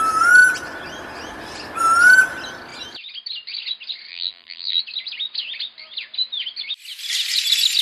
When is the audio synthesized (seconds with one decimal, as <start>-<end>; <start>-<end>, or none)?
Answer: 4.1-4.8